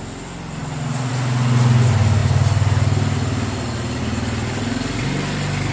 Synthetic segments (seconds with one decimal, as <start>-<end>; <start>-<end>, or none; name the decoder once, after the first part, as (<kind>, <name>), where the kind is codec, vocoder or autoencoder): none